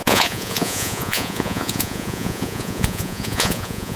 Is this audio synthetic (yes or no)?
yes